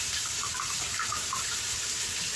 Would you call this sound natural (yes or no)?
no